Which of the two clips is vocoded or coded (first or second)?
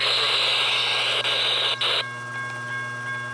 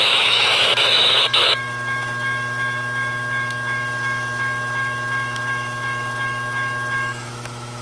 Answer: second